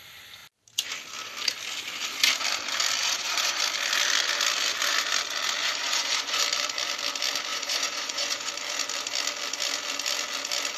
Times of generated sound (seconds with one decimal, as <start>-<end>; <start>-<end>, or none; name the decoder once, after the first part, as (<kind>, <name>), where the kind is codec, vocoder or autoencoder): 3.0-3.6 (vocoder, Vocos); 5.6-6.4; 7.5-8.5